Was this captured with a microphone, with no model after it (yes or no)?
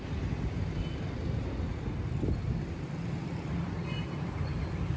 yes